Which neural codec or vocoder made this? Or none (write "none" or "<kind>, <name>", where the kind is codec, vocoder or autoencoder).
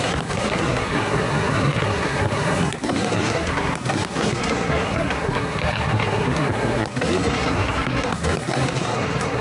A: codec, SNAC